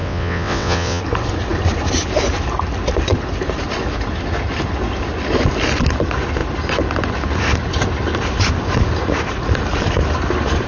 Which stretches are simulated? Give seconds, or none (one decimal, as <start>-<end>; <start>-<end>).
0.0-1.0